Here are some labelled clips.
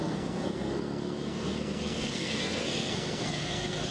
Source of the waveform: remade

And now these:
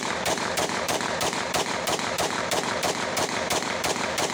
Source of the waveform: remade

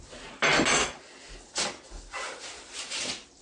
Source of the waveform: recorded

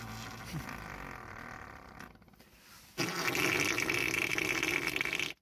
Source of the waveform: recorded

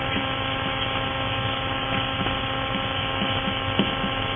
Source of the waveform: recorded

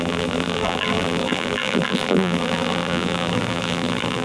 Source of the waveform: remade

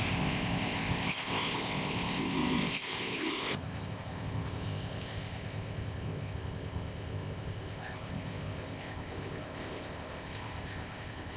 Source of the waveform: remade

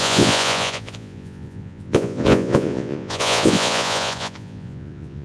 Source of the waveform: remade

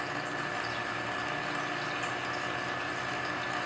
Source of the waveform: recorded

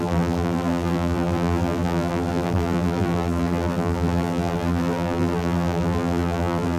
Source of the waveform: remade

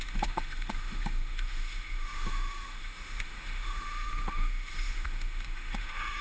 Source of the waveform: remade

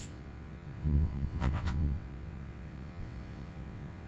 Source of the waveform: remade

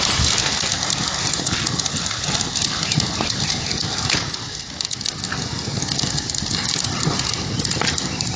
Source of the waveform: recorded